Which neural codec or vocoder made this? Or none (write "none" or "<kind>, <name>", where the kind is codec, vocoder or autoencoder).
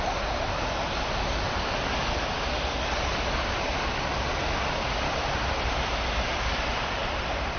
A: none